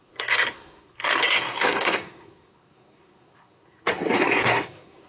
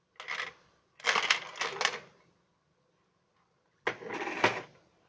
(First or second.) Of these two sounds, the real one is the second